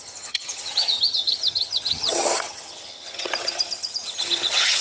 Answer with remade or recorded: remade